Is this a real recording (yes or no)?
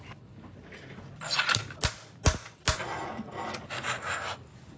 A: yes